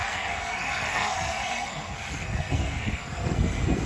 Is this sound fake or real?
fake